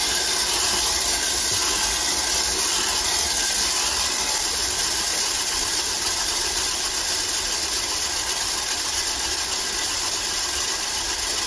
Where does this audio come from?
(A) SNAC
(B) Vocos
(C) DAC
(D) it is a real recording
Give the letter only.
D